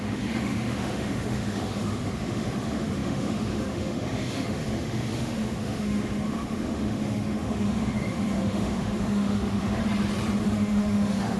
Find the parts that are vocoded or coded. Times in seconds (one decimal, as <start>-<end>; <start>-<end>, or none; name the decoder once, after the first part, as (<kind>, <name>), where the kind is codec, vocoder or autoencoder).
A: 0.0-9.8 (autoencoder, DAC-VAE); 10.4-11.4